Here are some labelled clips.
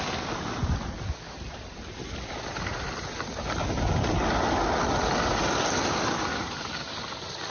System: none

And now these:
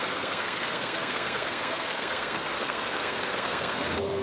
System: codec, SNAC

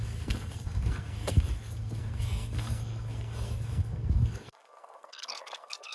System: codec, SNAC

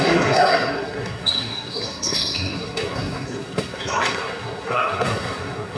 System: codec, SNAC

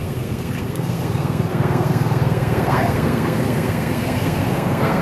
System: codec, SNAC